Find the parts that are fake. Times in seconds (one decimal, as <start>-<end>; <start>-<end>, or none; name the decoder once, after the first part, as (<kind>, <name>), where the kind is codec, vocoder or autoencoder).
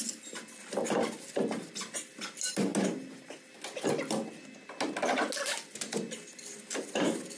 none